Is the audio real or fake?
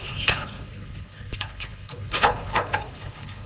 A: fake